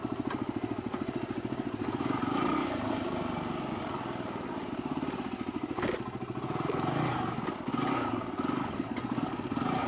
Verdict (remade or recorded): recorded